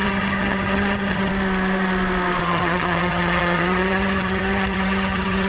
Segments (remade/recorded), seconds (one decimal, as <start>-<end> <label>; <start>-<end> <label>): 0.0-1.3 remade; 1.3-2.4 recorded; 2.4-5.5 remade